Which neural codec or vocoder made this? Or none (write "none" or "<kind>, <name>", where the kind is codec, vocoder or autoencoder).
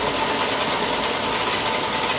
none